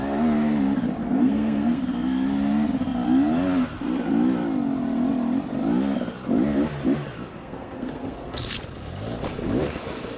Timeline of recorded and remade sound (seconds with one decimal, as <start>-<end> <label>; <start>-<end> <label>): 0.0-1.0 recorded; 1.0-1.8 remade; 1.8-7.3 recorded; 7.3-8.4 remade; 8.4-10.2 recorded